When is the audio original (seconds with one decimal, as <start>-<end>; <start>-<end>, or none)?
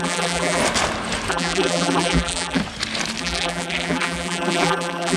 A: 0.6-1.3; 2.6-3.2